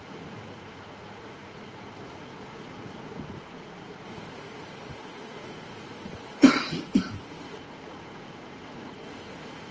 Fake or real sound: fake